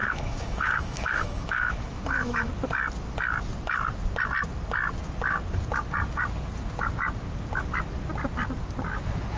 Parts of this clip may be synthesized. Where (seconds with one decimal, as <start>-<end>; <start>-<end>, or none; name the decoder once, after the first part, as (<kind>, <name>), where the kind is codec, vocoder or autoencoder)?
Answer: 0.0-2.5 (autoencoder, DAC-VAE)